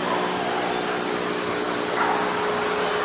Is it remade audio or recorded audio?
recorded